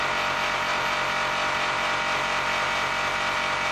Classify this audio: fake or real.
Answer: real